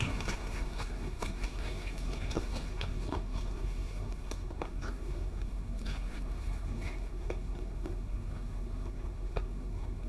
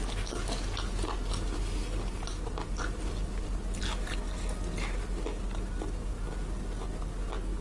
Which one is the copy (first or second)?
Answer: first